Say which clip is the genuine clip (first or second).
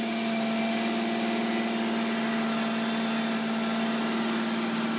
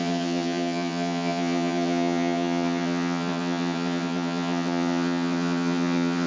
first